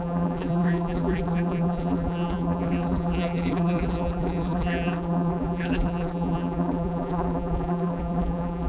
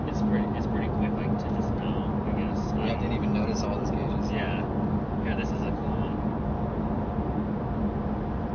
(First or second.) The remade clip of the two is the first